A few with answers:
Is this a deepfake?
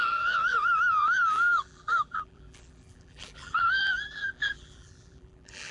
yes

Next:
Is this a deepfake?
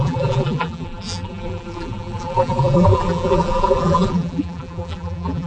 yes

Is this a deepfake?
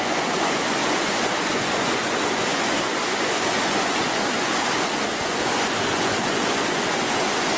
yes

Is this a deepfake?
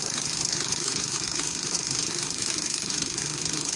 yes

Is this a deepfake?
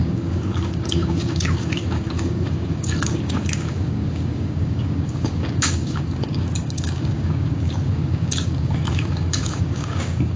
yes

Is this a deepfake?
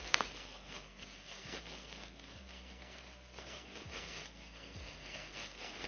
yes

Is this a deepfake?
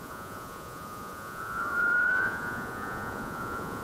yes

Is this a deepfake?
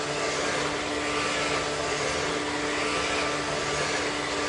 no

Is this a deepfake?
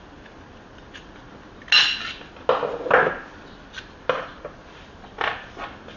no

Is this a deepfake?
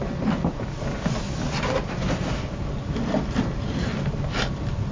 no